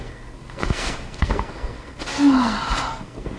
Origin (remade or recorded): remade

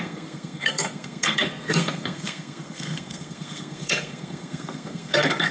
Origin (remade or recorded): remade